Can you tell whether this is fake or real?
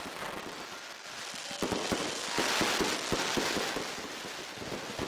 real